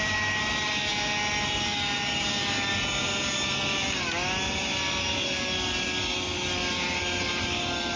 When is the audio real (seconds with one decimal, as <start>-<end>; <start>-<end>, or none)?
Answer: 0.0-8.0